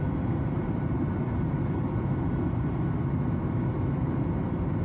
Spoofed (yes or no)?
no